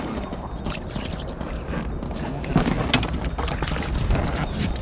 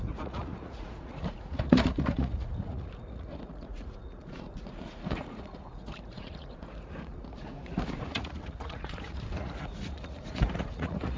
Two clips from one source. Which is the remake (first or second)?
second